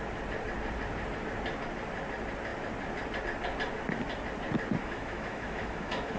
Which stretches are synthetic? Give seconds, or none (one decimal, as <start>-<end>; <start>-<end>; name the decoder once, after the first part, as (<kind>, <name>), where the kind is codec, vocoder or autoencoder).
4.8-6.2 (autoencoder, DAC-VAE)